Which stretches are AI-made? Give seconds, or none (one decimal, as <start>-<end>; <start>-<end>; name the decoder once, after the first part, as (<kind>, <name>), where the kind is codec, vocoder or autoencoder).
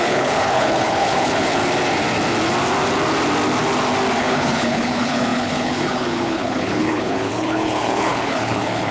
0.0-1.6 (codec, HILCodec); 4.2-8.9